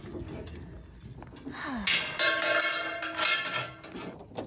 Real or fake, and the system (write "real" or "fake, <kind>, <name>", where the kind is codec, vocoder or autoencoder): real